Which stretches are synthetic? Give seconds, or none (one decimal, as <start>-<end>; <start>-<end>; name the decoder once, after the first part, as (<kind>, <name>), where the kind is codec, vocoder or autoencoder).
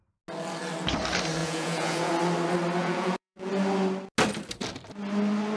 1.4-2.1 (vocoder, Vocos); 2.8-3.5